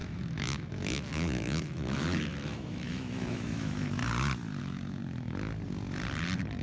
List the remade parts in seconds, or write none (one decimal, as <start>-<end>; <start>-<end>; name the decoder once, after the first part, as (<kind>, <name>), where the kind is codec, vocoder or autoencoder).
0.0-4.0 (autoencoder, DAC-VAE); 4.6-5.0